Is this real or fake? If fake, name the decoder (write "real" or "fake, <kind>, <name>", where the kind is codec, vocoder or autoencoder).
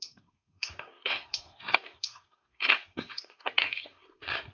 fake, codec, SNAC